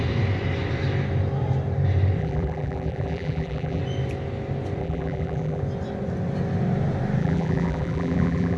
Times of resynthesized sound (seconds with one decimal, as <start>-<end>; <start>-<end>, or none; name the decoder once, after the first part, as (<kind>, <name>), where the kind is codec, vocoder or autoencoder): 2.2-3.8 (vocoder, BigVGAN v2); 4.8-5.6; 7.2-8.6